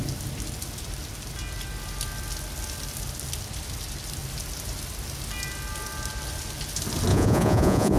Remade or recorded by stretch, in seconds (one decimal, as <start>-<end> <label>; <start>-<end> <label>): 0.0-7.1 recorded; 7.1-8.0 remade